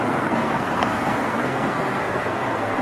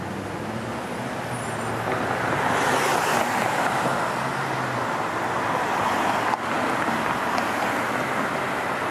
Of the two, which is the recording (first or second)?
second